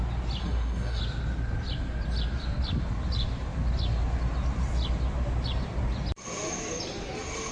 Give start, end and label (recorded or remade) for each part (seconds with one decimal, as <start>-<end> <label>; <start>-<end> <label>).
0.0-0.4 recorded; 0.4-1.0 remade; 1.0-7.5 recorded